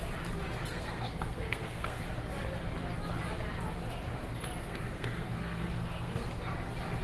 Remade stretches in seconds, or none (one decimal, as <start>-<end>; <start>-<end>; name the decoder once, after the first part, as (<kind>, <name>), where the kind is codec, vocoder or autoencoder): 0.7-2.0 (codec, SNAC); 4.6-6.3